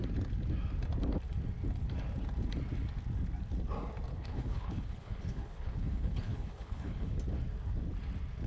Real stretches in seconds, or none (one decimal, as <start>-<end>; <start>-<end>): 0.0-4.1; 7.2-8.5